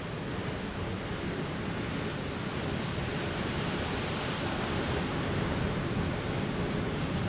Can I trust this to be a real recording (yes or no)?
yes